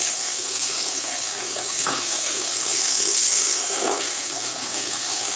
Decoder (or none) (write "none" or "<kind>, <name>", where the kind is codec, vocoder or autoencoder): codec, SNAC